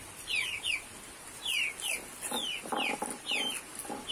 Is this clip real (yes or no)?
yes